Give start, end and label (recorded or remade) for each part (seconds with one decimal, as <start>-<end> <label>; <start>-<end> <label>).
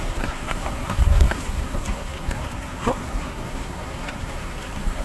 0.0-5.0 remade